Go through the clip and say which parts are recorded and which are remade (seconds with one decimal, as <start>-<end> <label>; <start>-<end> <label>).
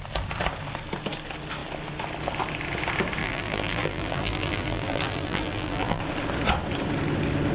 0.0-3.2 recorded; 3.2-6.0 remade; 6.0-7.5 recorded